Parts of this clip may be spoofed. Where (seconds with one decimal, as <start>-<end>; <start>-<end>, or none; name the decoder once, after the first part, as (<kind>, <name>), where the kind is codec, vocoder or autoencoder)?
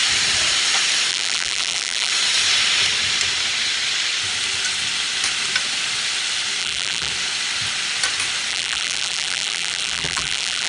1.1-2.1 (vocoder, BigVGAN v2); 6.6-7.1; 8.5-10.7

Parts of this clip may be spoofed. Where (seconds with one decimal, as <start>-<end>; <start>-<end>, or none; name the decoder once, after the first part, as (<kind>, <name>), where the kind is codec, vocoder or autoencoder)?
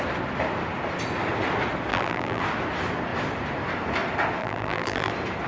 1.9-2.4 (vocoder, BigVGAN v2); 4.4-5.1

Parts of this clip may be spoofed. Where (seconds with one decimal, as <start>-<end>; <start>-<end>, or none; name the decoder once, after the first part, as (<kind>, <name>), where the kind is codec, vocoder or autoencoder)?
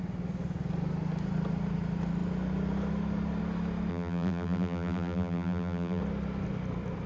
3.9-6.0 (vocoder, BigVGAN v2)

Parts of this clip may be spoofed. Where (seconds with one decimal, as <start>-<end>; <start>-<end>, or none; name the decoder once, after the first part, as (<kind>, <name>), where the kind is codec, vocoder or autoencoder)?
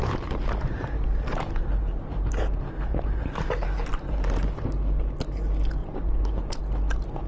0.0-4.4 (vocoder, BigVGAN v2); 5.8-6.6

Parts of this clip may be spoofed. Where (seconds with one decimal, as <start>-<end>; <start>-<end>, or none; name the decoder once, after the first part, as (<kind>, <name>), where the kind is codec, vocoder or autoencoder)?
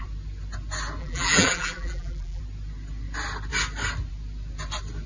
1.0-2.4 (vocoder, BigVGAN v2)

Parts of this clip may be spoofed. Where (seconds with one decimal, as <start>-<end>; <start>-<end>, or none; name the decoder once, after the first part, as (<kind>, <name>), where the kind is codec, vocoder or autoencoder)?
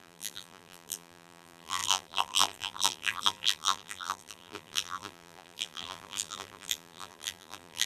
0.0-7.9 (vocoder, BigVGAN v2)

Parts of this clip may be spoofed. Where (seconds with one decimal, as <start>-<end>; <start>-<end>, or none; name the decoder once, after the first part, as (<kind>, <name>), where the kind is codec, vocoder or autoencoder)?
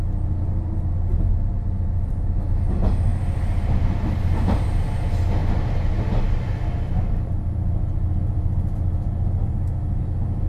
3.1-4.8 (vocoder, BigVGAN v2)